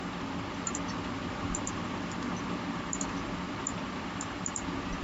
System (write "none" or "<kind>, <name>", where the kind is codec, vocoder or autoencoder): none